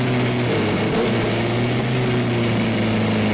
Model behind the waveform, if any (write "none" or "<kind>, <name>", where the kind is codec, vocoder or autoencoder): none